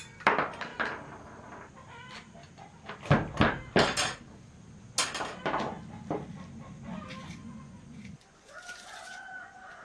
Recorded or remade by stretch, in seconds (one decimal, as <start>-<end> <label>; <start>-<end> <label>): 0.0-7.2 recorded; 7.2-9.8 remade